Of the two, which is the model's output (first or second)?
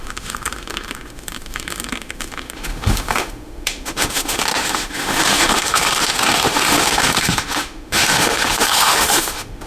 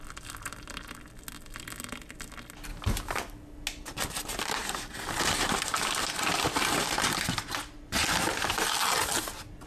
first